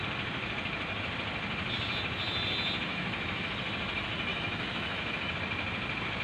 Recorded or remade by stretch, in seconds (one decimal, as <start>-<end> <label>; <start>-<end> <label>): 0.0-2.9 recorded; 2.9-3.5 remade; 3.5-4.3 recorded; 4.3-5.3 remade; 5.3-6.2 recorded